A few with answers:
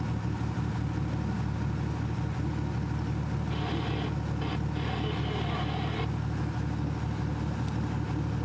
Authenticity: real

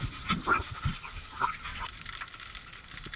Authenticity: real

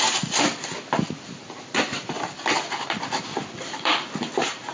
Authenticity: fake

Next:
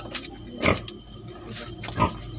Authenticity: real